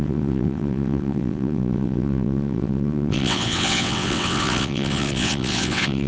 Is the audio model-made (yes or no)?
yes